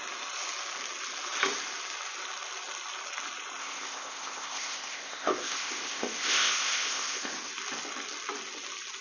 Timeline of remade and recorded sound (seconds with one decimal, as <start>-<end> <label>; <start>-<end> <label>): 0.0-3.6 recorded; 3.6-7.5 remade; 7.5-9.0 recorded